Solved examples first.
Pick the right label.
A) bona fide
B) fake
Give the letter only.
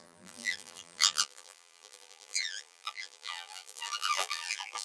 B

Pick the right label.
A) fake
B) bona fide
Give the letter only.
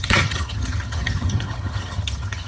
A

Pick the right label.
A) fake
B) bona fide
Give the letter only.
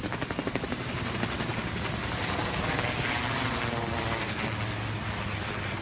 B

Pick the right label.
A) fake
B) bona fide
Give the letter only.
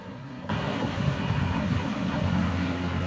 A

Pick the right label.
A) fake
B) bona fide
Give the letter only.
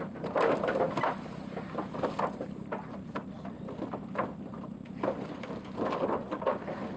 B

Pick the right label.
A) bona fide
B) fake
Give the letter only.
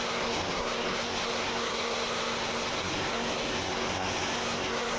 B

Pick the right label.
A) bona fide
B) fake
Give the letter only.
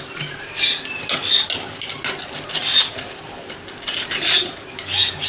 A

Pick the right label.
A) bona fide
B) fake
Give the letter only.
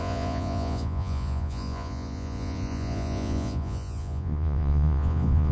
B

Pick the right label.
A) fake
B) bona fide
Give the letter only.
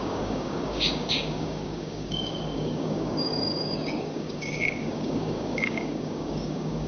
A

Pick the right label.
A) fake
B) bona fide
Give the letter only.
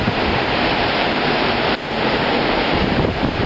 A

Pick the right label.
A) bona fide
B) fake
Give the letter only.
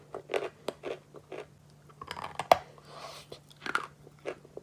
A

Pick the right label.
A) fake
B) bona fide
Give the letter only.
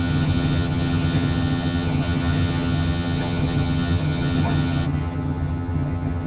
A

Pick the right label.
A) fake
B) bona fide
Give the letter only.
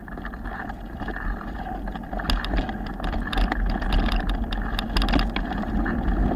B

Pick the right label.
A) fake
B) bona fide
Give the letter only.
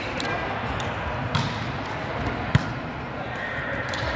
B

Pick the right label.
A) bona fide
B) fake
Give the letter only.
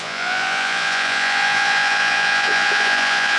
B